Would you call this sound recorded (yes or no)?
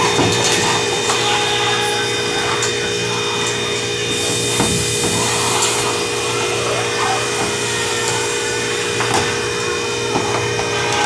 yes